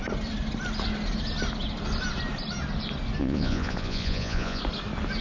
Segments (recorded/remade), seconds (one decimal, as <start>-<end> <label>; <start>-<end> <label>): 0.0-3.2 recorded; 3.2-4.6 remade; 4.6-5.2 recorded

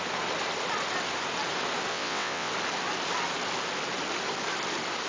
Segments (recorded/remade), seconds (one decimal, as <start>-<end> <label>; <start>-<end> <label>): 0.0-1.9 recorded; 1.9-2.5 remade; 2.5-5.1 recorded

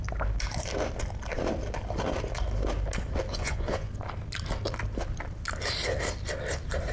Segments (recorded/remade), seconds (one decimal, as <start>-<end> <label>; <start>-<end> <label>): 0.0-3.3 recorded; 3.3-3.9 remade; 3.9-6.9 recorded

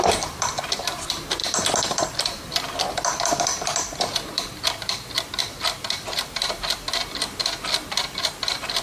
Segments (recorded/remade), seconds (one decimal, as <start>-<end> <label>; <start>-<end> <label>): 0.0-7.4 remade; 7.4-8.1 recorded; 8.1-8.8 remade